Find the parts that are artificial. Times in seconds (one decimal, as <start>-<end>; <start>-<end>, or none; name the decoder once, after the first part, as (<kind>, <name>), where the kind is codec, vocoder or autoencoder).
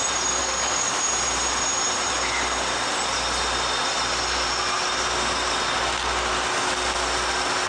0.4-1.0 (codec, DAC)